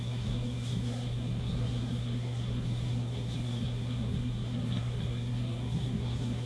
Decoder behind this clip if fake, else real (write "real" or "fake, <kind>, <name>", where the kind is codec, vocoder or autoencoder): fake, codec, SNAC